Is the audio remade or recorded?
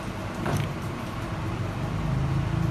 recorded